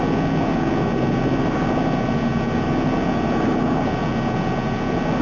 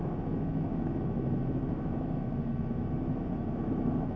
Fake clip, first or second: second